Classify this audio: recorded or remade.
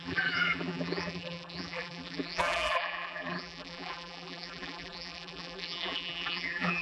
remade